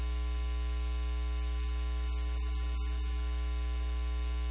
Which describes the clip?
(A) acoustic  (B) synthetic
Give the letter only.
A